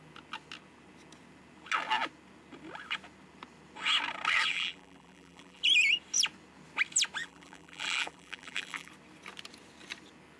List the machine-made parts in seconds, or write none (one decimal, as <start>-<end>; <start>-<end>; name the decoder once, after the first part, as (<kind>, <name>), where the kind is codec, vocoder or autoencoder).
4.5-5.6 (vocoder, BigVGAN v2); 7.2-8.9